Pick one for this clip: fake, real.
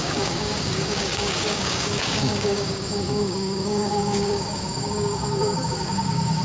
fake